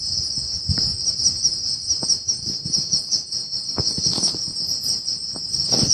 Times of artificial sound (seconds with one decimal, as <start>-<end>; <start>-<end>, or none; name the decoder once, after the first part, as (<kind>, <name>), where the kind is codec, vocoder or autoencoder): 0.0-0.9 (vocoder, Vocos); 2.4-5.9